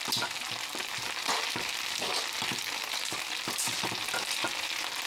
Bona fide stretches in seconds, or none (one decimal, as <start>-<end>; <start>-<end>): 0.0-5.1

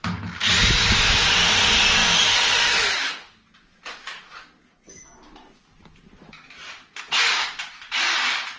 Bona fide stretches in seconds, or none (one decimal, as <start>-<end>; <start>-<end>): 0.0-8.6